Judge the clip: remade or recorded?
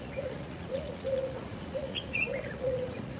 remade